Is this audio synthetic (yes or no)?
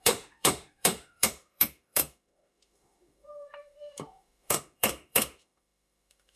yes